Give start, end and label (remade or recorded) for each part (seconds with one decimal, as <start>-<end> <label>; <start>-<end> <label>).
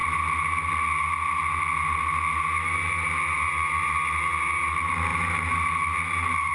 0.0-6.5 recorded